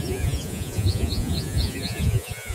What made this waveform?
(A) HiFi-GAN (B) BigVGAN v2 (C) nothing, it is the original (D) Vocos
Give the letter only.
D